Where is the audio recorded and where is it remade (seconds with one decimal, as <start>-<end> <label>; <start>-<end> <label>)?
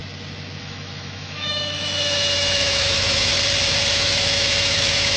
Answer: 0.0-0.6 recorded; 0.6-3.3 remade; 3.3-3.9 recorded; 3.9-5.2 remade